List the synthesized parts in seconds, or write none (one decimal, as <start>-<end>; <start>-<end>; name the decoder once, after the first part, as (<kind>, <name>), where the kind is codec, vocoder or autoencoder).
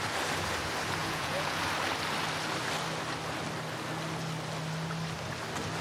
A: 1.0-1.6 (vocoder, Vocos)